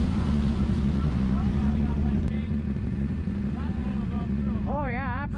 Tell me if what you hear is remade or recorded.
remade